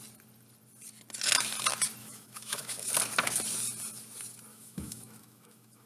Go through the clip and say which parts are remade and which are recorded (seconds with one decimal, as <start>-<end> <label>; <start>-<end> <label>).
0.0-2.0 recorded; 2.0-2.9 remade; 2.9-4.5 recorded; 4.5-5.9 remade